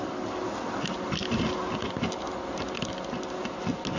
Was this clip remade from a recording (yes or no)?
no